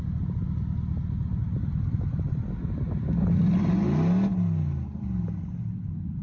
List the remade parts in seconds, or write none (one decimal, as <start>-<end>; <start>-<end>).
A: none